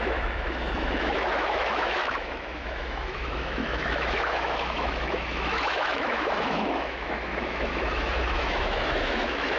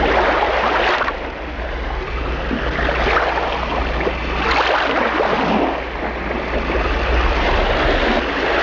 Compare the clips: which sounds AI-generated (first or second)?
first